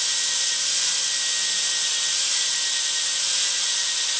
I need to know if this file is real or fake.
real